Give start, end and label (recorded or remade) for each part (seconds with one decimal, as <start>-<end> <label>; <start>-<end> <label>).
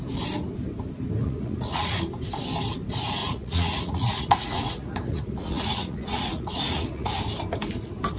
0.0-1.2 recorded; 1.2-1.9 remade; 1.9-3.2 recorded; 3.2-7.2 remade; 7.2-8.2 recorded